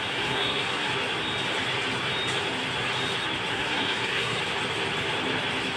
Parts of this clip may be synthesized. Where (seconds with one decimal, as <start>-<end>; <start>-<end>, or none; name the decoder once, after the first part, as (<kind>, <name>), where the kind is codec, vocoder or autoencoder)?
0.0-0.9 (codec, SNAC); 3.5-4.4